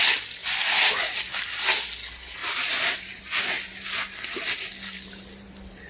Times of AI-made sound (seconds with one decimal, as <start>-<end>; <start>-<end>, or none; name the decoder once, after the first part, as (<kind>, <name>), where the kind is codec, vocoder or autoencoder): none